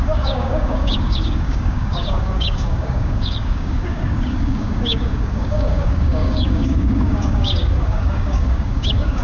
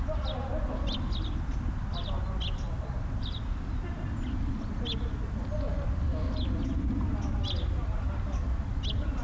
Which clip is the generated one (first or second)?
first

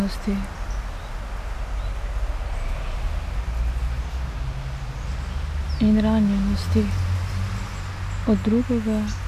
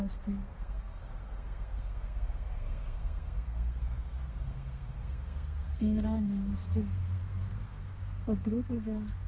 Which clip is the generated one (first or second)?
second